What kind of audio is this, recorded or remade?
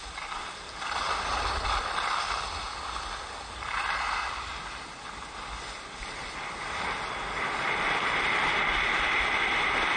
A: recorded